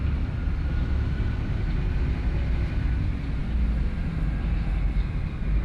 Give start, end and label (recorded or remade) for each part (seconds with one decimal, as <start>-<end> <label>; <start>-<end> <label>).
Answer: 0.0-5.6 recorded